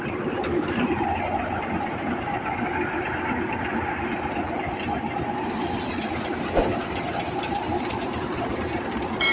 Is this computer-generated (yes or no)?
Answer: no